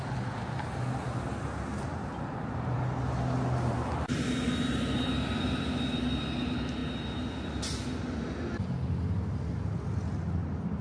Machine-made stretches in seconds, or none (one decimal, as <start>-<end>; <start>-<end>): none